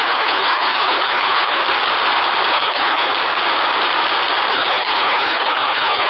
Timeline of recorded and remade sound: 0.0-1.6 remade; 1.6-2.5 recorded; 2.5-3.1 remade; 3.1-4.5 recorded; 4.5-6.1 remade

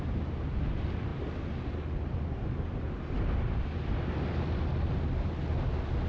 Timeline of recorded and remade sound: 0.0-6.1 recorded